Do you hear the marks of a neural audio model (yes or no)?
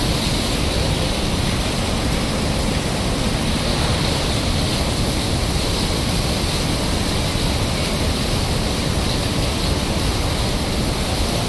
yes